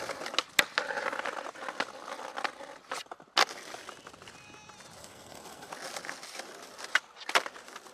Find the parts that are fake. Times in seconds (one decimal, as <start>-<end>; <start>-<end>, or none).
5.0-5.7